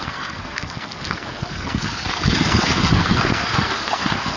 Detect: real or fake fake